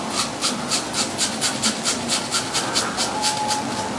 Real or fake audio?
real